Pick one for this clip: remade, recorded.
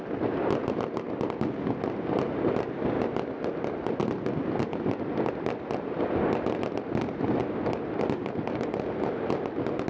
recorded